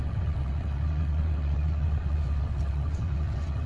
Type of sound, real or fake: fake